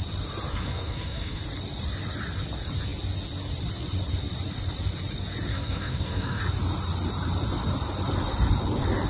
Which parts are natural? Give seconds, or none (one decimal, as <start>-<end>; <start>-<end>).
0.0-0.5; 1.4-5.5; 6.4-9.1